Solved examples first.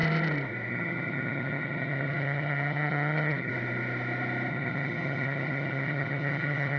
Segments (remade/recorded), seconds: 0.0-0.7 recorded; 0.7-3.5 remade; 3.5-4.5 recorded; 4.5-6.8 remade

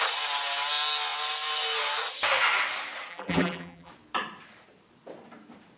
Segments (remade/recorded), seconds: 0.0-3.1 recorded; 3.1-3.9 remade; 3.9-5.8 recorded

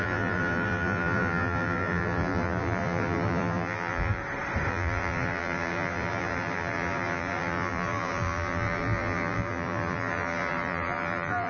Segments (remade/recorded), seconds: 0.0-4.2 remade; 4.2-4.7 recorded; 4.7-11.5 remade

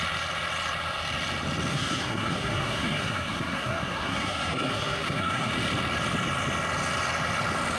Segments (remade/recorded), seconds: 0.0-1.7 recorded; 1.7-5.5 remade; 5.5-7.8 recorded

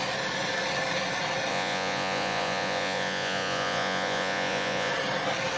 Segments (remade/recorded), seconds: 0.0-1.5 recorded; 1.5-4.9 remade; 4.9-5.6 recorded

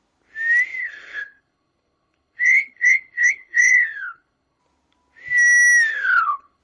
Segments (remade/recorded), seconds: 0.0-0.8 recorded; 0.8-4.6 remade; 4.6-5.9 recorded; 5.9-6.6 remade

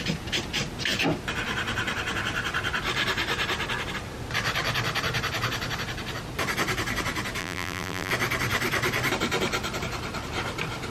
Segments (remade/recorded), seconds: 0.0-7.4 recorded; 7.4-8.1 remade; 8.1-10.9 recorded